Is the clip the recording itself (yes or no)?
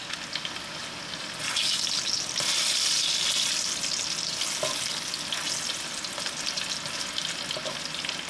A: yes